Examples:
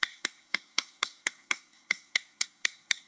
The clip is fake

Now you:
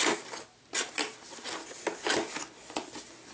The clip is real